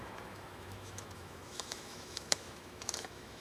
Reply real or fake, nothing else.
fake